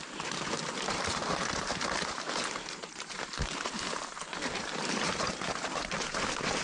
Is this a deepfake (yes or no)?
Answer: yes